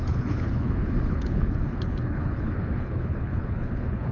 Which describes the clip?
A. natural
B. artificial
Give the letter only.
B